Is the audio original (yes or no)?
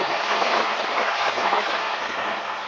no